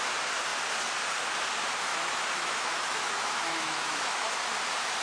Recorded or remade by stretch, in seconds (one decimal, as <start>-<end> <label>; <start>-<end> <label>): 0.0-1.9 recorded; 1.9-4.3 remade; 4.3-5.0 recorded